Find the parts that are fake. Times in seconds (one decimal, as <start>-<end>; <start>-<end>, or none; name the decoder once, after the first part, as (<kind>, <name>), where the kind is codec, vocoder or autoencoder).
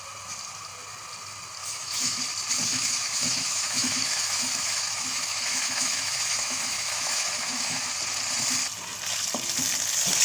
1.6-2.2 (autoencoder, DAC-VAE); 2.7-7.9